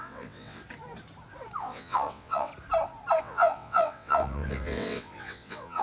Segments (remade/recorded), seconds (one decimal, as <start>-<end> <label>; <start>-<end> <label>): 0.0-0.6 remade; 0.6-1.6 recorded; 1.6-2.5 remade; 2.5-3.2 recorded; 3.2-5.8 remade